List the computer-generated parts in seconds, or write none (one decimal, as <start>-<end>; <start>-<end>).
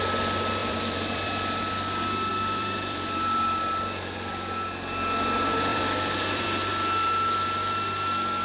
0.6-1.6; 2.3-4.3; 5.7-6.7